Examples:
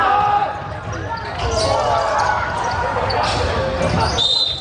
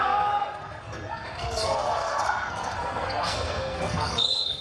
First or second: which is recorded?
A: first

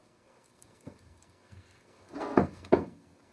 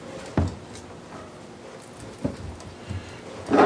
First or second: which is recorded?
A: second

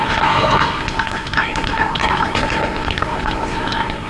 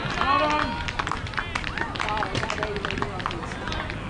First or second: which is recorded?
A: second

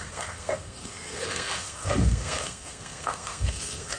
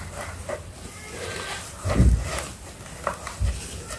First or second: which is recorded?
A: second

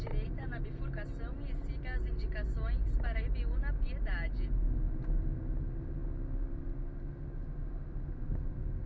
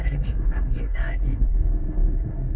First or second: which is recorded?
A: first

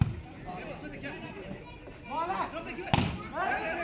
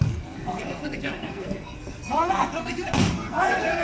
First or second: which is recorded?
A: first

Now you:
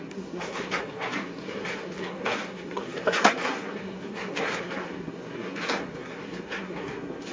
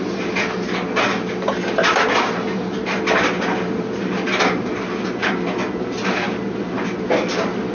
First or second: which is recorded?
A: second